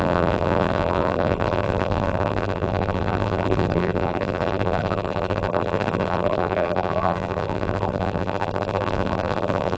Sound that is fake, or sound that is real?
fake